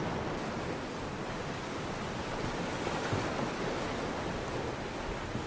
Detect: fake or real real